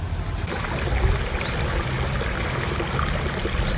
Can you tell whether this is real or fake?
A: real